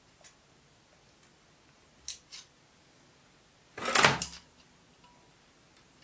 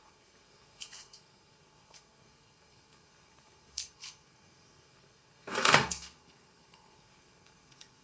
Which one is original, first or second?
first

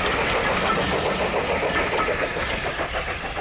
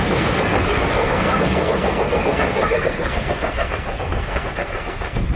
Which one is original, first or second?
first